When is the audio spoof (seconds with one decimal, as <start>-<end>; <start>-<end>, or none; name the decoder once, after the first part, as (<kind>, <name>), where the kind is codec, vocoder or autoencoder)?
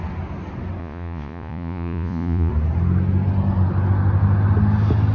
0.8-2.5 (vocoder, Vocos)